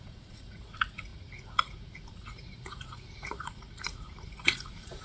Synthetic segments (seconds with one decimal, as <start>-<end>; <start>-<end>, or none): 0.0-5.0

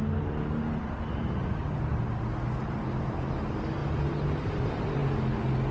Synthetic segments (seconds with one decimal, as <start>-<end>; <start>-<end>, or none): none